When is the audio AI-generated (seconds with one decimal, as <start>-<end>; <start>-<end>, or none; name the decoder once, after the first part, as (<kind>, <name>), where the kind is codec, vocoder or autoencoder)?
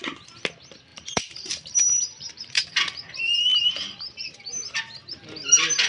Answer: 0.9-2.8 (vocoder, BigVGAN v2); 3.5-4.8